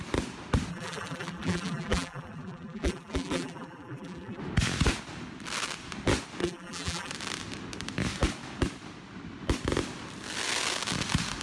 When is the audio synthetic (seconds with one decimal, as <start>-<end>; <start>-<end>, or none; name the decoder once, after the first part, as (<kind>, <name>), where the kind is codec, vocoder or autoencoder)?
0.7-4.4 (vocoder, BigVGAN v2); 6.4-7.1